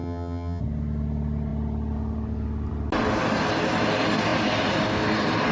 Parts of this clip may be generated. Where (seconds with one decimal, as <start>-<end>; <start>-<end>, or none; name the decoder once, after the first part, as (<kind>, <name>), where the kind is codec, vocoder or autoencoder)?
0.0-0.6 (vocoder, HiFi-GAN)